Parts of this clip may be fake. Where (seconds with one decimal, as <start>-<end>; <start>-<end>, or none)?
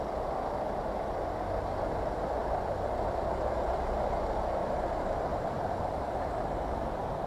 5.3-7.3